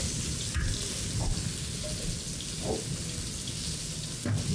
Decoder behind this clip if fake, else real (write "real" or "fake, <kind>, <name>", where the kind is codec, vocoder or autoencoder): real